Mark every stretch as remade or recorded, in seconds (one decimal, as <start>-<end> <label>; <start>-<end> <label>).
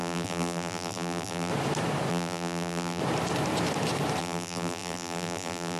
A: 0.0-1.5 remade; 1.5-2.1 recorded; 2.1-3.0 remade; 3.0-4.2 recorded; 4.2-5.8 remade